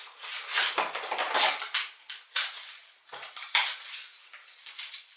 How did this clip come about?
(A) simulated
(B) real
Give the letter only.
B